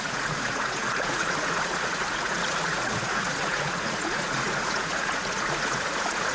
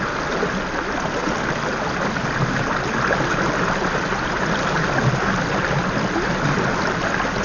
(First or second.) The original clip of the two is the second